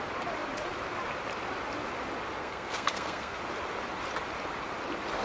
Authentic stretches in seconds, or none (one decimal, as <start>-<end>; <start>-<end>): 0.0-2.4; 3.4-5.2